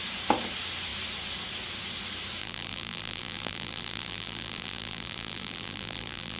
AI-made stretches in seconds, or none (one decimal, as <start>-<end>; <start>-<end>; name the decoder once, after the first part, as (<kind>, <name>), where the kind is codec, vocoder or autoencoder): 2.4-6.4 (vocoder, BigVGAN v2)

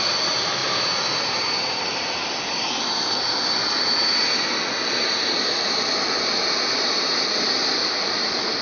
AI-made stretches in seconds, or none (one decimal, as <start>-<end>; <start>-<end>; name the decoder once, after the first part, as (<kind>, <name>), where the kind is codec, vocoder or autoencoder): 7.8-8.6 (vocoder, BigVGAN v2)